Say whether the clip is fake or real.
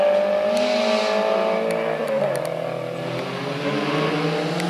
real